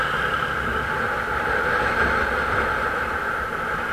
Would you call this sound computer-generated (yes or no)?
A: no